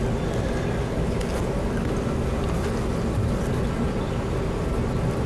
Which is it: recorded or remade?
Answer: recorded